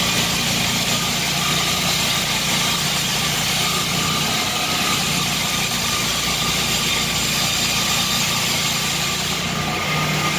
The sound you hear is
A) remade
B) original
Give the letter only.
B